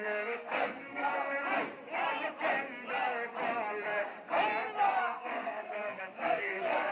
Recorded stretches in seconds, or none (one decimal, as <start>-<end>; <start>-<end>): 1.1-5.0